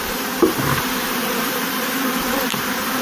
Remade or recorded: remade